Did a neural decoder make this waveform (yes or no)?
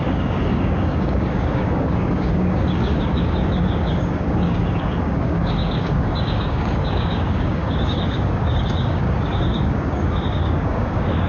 yes